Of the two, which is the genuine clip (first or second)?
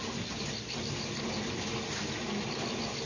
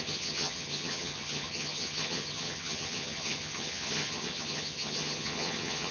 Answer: first